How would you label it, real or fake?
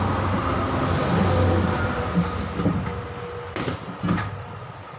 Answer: real